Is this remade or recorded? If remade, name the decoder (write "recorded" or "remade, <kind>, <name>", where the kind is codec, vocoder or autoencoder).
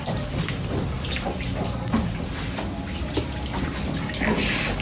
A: recorded